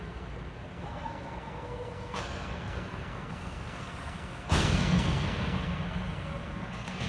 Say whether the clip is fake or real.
fake